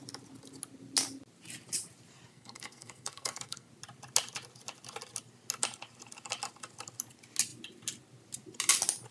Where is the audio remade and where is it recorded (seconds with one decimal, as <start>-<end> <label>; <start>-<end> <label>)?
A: 0.0-2.3 recorded; 2.3-3.7 remade; 3.7-9.1 recorded